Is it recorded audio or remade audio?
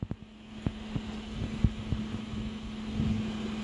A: recorded